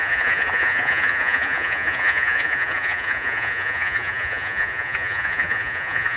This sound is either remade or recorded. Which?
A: remade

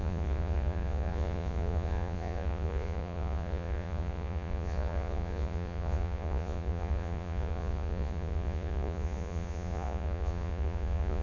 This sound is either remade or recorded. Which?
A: remade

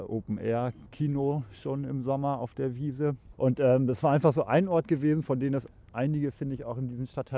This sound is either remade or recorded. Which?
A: recorded